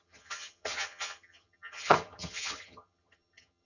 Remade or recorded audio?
remade